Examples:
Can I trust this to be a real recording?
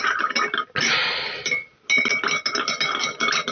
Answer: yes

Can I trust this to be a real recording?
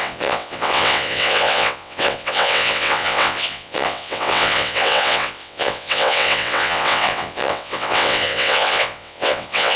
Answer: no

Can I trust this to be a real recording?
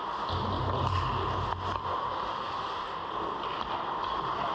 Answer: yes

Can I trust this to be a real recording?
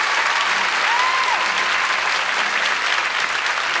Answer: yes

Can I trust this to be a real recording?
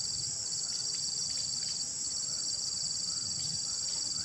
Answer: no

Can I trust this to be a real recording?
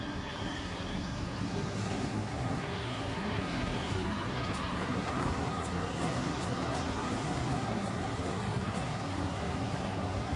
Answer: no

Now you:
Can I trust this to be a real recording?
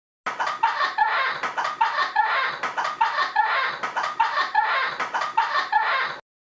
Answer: yes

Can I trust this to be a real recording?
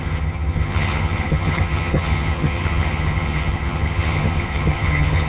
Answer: no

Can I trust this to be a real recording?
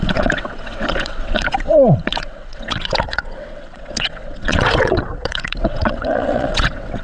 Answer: no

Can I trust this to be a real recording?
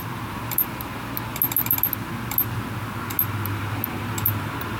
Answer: yes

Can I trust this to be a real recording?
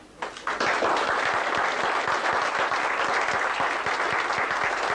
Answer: yes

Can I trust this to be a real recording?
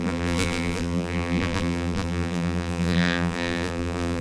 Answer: no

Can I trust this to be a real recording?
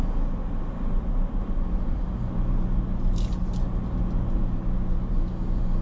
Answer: yes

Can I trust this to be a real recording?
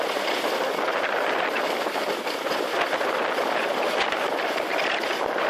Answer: yes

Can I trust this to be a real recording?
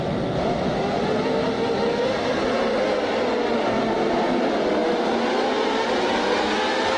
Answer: yes